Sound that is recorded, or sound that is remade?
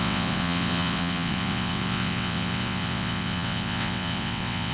remade